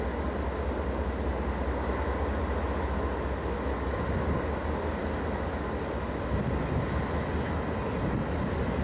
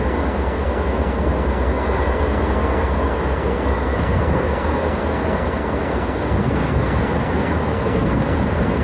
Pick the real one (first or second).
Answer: first